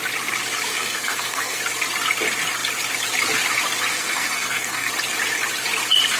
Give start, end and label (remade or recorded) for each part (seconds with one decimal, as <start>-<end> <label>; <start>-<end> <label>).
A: 0.0-0.7 recorded; 0.7-1.6 remade; 1.6-3.9 recorded; 3.9-4.9 remade; 4.9-6.2 recorded